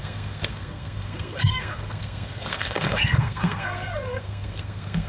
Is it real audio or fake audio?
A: fake